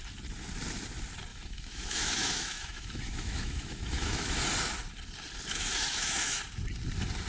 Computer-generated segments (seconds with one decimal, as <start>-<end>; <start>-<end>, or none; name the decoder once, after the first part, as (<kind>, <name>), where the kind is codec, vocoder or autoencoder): 1.3-4.4 (autoencoder, DAC-VAE); 5.5-6.4